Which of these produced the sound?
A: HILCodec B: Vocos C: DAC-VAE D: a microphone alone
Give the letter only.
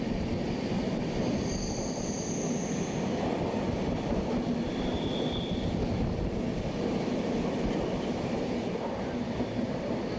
D